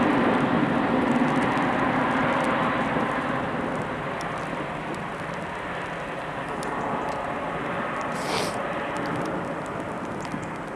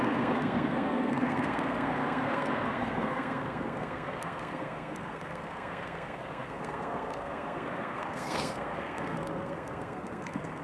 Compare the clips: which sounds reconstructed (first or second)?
second